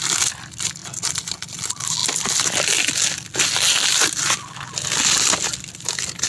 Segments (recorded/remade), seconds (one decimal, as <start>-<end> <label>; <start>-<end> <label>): 0.0-6.3 recorded